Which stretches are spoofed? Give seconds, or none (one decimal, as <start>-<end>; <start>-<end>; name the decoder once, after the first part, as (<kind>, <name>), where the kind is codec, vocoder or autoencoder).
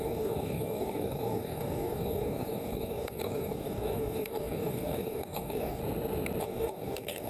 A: 0.0-5.8 (codec, DAC); 6.4-7.3